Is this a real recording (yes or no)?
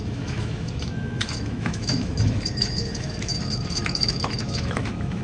no